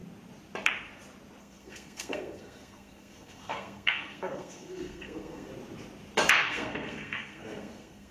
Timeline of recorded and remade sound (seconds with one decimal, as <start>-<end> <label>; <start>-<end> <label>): 0.0-1.4 recorded; 1.4-5.5 remade; 5.5-6.3 recorded; 6.3-8.1 remade